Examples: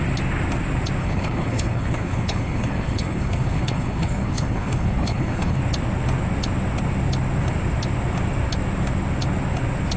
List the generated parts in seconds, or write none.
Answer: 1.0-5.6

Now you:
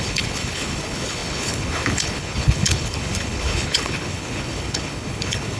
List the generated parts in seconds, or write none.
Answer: 0.0-5.6

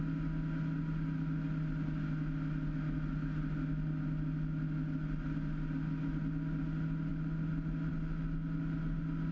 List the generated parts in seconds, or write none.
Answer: none

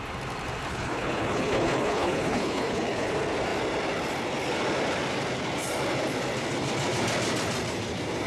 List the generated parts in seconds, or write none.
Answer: 0.7-3.1

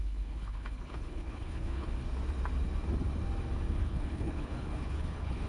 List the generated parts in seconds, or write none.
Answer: 0.0-1.9; 3.8-5.5

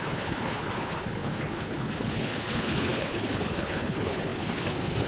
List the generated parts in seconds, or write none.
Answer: 0.0-5.1

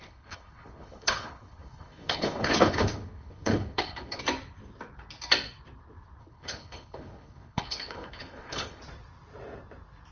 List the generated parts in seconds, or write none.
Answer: 0.0-4.2; 6.2-8.8

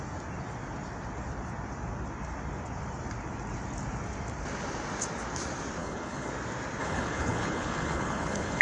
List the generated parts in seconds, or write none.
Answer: 5.8-6.3; 6.8-8.6